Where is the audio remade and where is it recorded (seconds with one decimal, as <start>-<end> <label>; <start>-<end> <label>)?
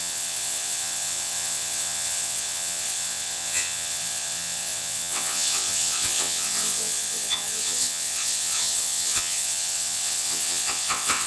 0.0-11.3 remade